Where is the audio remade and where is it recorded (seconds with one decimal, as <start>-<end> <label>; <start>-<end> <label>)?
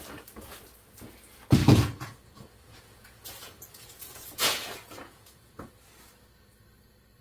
0.0-1.6 recorded; 1.6-5.7 remade; 5.7-7.2 recorded